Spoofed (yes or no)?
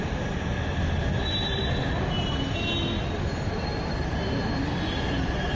no